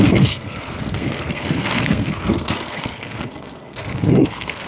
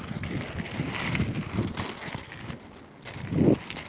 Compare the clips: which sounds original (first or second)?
second